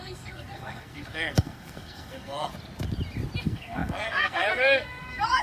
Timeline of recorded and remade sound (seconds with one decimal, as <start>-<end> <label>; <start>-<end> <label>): 0.0-2.5 remade; 2.5-3.4 recorded; 3.4-5.4 remade